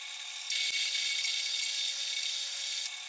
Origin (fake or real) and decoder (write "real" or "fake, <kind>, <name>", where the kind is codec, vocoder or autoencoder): real